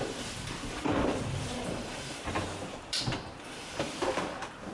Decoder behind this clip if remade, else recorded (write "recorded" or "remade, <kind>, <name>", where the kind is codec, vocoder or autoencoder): recorded